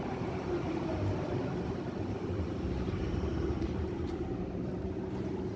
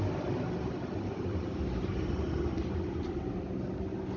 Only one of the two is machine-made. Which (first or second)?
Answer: first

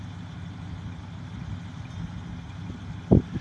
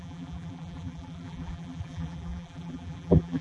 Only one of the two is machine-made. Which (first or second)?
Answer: second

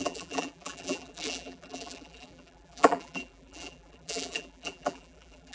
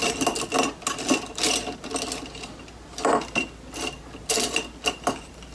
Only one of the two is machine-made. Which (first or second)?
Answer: first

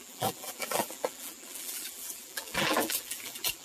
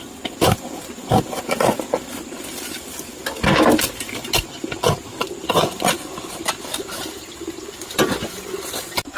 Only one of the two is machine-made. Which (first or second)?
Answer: first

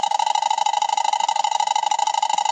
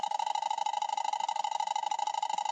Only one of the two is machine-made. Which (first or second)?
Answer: first